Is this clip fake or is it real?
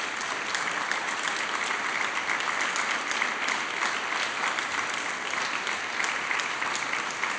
real